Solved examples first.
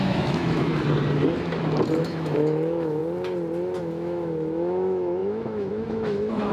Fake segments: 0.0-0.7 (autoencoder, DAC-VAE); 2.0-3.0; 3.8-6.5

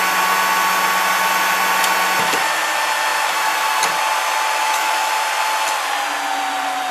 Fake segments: 4.6-5.1 (autoencoder, DAC-VAE)

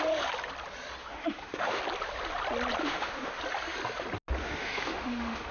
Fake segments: 1.0-1.8 (autoencoder, DAC-VAE); 2.8-3.4; 4.4-5.5